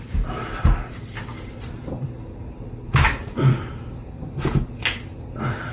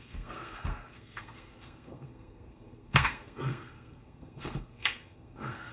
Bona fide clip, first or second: first